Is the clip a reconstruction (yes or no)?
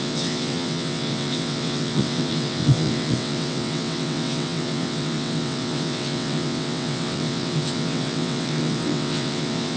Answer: yes